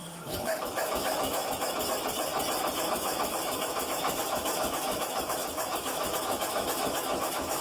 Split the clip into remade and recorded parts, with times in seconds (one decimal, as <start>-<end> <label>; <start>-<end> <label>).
0.0-2.3 remade; 2.3-2.8 recorded; 2.8-7.6 remade